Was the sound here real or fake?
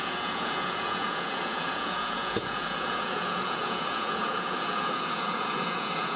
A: fake